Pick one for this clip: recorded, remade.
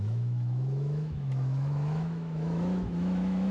remade